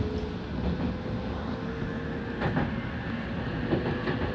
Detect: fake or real real